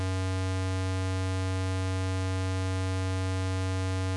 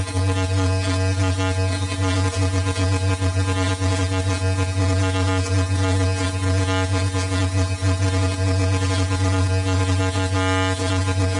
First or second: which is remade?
second